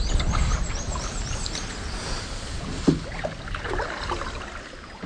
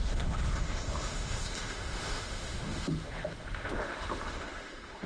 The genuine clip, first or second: first